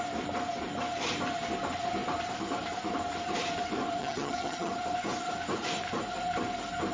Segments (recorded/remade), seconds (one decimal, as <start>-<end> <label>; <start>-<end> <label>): 0.0-4.0 recorded; 4.0-4.7 remade; 4.7-6.9 recorded